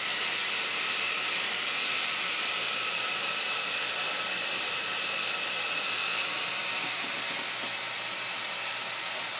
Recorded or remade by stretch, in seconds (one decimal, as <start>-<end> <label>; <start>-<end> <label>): 0.0-0.4 recorded; 0.4-5.5 remade; 5.5-9.4 recorded